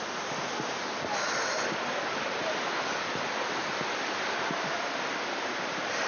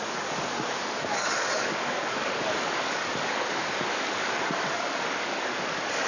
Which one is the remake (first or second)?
second